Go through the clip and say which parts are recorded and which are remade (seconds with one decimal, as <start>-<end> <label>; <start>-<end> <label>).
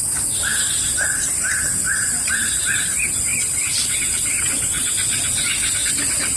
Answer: 0.0-6.4 recorded